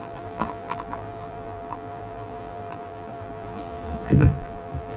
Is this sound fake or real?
fake